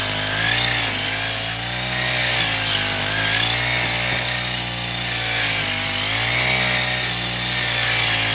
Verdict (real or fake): real